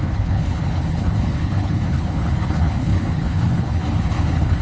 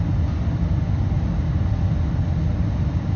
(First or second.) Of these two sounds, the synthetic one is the first